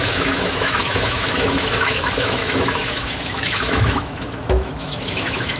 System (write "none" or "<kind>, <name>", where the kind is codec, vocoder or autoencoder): autoencoder, DAC-VAE